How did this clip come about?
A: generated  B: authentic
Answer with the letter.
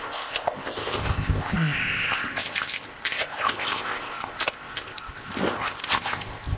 A